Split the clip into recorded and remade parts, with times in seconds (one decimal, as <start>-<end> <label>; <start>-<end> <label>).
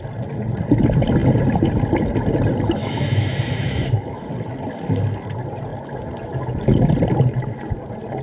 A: 0.0-2.8 recorded; 2.8-4.3 remade; 4.3-8.2 recorded